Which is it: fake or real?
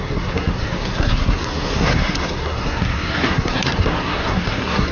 fake